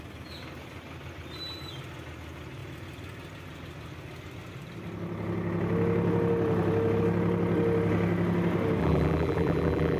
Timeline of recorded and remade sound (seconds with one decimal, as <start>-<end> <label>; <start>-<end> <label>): 0.0-8.8 recorded; 8.8-10.0 remade